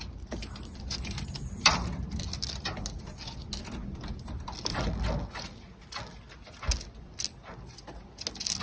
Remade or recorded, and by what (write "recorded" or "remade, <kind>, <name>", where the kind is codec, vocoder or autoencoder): recorded